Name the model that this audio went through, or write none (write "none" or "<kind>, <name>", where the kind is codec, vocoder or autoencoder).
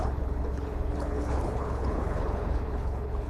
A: codec, HILCodec